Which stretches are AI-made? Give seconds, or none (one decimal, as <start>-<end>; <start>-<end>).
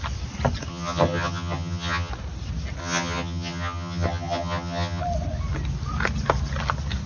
0.7-2.1; 2.8-5.0